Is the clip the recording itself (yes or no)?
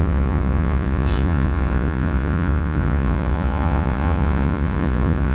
no